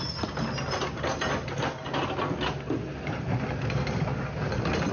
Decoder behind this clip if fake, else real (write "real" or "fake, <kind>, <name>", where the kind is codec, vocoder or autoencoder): real